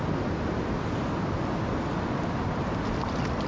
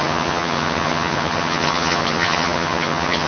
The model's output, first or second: second